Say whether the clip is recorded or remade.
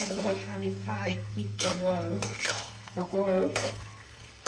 remade